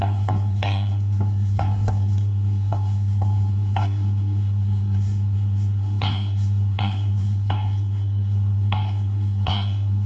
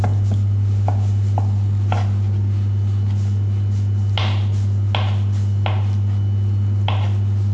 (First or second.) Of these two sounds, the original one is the second